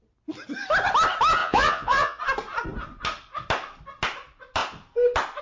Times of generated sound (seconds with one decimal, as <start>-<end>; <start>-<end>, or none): 1.4-2.2